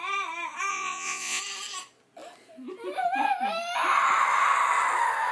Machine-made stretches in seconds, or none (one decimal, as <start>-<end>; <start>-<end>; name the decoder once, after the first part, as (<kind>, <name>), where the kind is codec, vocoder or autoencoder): 0.7-1.4 (vocoder, Vocos)